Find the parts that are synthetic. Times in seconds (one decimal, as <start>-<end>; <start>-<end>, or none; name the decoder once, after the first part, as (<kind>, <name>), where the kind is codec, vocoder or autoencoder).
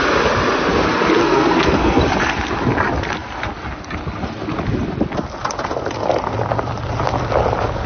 1.2-2.0 (codec, SNAC)